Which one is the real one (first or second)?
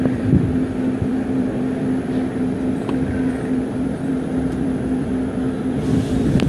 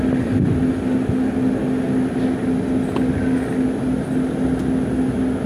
second